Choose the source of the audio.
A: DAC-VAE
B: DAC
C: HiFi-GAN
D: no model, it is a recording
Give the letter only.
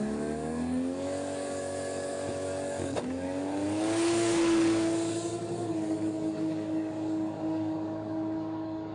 B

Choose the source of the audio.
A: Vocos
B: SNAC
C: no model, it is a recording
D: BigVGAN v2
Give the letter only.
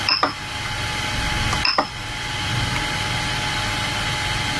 C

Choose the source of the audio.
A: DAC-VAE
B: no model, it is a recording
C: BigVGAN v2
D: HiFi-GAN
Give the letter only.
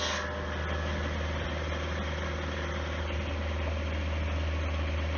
B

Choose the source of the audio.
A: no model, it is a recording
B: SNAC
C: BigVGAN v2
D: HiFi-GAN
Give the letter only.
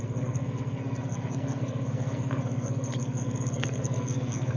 B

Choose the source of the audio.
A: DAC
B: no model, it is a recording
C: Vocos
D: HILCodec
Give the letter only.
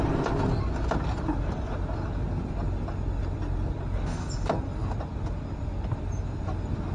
B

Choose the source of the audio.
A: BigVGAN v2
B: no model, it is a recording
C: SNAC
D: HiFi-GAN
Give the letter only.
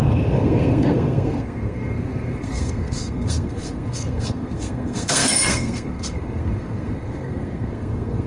C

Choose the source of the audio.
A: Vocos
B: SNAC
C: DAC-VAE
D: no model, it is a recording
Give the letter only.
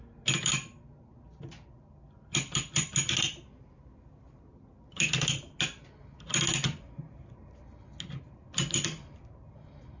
D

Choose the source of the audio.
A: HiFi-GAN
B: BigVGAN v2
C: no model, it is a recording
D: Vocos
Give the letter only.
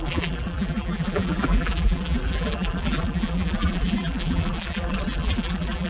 B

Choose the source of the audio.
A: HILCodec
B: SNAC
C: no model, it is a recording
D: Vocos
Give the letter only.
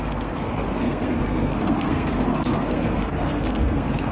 B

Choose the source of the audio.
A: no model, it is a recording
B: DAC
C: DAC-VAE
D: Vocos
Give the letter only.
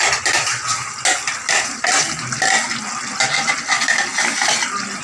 A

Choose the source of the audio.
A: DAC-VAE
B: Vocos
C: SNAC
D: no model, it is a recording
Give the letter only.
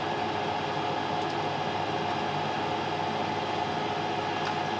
D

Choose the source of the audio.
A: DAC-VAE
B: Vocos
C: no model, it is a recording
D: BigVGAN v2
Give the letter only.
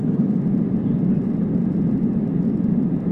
C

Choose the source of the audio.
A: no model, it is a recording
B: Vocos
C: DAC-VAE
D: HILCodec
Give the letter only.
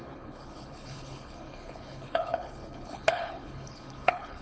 D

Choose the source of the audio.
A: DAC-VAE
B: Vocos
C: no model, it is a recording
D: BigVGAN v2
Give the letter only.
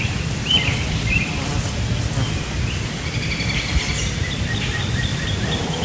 D